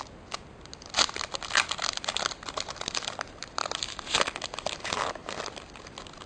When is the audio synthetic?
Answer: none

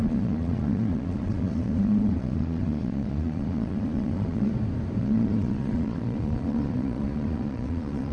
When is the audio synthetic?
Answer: 0.0-4.5; 5.0-8.1

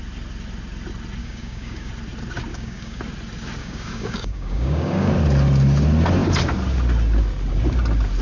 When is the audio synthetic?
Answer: 1.2-1.9; 2.5-3.0; 3.6-5.1